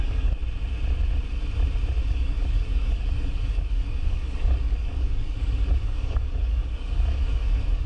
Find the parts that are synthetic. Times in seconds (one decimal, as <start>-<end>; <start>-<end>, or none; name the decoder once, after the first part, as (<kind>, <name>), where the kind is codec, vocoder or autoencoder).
0.0-0.4 (codec, DAC); 2.1-7.9